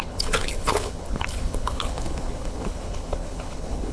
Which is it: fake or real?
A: fake